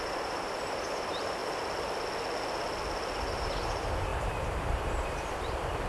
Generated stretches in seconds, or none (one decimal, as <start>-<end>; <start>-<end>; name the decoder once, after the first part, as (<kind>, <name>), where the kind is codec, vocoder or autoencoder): 0.0-1.4 (vocoder, BigVGAN v2); 3.3-5.9